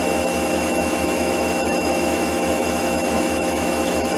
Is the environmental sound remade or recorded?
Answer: remade